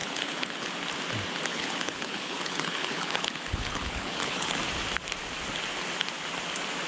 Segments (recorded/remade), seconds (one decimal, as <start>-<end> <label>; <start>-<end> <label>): 0.0-0.7 remade; 0.7-1.5 recorded; 1.5-4.6 remade; 4.6-6.9 recorded